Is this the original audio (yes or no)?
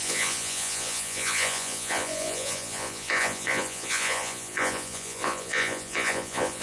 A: no